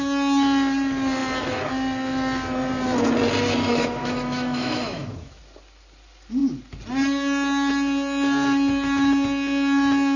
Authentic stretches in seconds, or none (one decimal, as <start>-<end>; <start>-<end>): 0.0-3.7; 5.4-10.2